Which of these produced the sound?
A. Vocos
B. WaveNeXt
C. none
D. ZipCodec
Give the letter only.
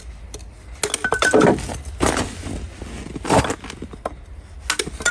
C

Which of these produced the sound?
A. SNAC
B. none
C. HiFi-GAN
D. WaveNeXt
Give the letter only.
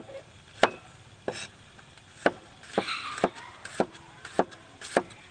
B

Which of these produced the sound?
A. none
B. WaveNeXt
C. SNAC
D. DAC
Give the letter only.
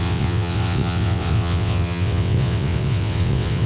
B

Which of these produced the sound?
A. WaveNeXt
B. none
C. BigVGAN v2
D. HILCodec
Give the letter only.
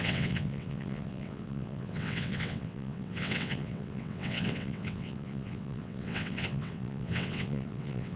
A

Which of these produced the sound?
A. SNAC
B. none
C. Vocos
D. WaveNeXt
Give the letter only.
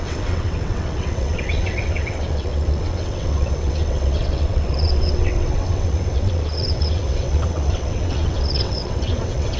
D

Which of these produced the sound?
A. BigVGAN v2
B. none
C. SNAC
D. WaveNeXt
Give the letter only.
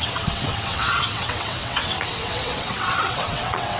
D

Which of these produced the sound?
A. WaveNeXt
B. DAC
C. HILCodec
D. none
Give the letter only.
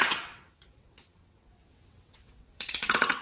A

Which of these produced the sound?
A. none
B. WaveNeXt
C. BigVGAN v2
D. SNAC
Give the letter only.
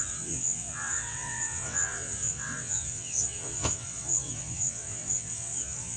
B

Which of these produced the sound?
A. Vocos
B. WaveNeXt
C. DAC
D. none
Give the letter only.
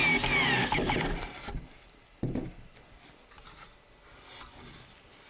D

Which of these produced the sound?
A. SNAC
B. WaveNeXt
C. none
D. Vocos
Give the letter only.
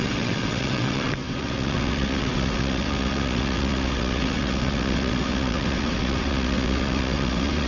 B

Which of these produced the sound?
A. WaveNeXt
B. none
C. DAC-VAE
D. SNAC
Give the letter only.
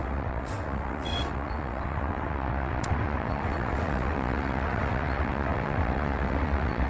A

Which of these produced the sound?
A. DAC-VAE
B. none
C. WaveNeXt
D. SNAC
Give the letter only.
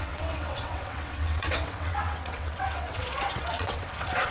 C